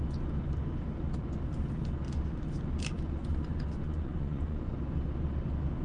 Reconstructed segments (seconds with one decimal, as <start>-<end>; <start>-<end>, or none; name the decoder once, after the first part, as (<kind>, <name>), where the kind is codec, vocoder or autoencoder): 3.2-4.7 (vocoder, Vocos)